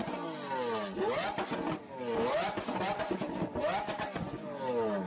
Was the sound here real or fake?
real